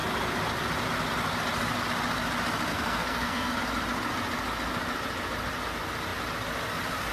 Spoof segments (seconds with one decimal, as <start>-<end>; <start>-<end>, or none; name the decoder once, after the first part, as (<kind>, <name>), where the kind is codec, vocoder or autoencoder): 2.7-3.6 (codec, SNAC)